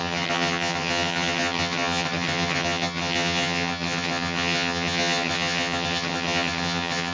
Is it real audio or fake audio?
fake